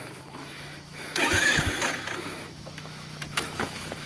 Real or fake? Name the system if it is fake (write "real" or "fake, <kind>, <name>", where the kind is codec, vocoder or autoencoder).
fake, autoencoder, DAC-VAE